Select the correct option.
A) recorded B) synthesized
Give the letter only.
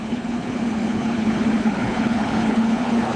B